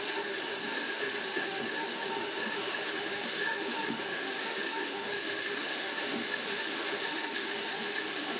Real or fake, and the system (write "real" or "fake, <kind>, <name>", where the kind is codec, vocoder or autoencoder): fake, autoencoder, DAC-VAE